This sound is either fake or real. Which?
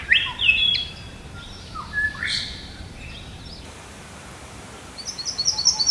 fake